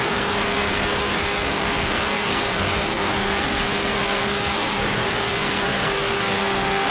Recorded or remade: remade